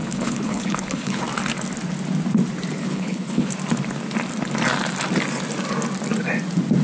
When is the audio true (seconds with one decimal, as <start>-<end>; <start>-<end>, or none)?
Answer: 1.2-2.8; 3.5-6.8